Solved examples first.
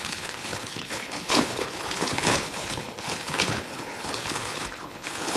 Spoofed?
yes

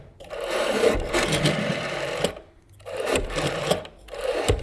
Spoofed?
yes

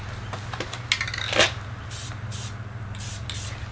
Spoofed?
no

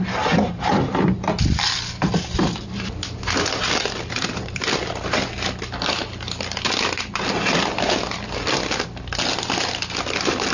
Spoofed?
no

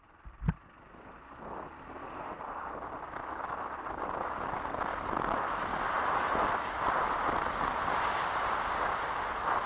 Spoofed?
no